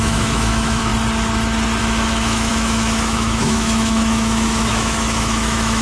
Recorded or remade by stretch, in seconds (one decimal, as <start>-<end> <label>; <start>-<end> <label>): 0.0-0.9 remade; 0.9-1.8 recorded; 1.8-5.8 remade